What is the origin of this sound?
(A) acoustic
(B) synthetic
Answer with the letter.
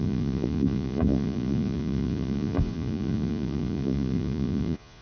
B